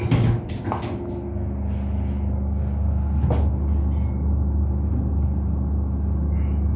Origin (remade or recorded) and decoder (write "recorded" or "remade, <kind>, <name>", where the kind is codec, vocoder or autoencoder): recorded